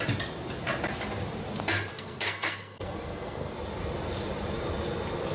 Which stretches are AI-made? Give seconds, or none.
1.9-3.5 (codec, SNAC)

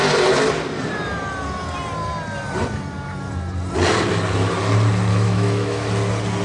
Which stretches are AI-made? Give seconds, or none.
5.1-5.9 (autoencoder, DAC-VAE)

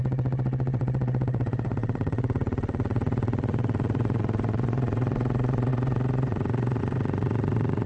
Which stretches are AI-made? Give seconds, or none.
0.0-7.9 (vocoder, Vocos)